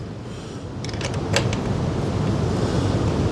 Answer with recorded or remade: recorded